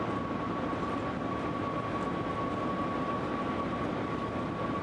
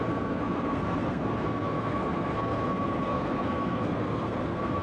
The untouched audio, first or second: first